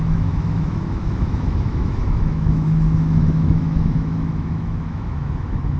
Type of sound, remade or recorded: remade